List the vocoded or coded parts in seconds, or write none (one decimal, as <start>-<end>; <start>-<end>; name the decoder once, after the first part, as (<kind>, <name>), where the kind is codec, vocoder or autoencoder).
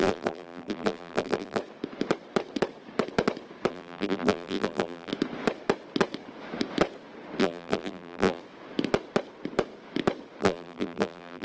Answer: 0.0-1.6 (vocoder, BigVGAN v2); 3.7-5.1; 7.4-8.4; 10.4-11.4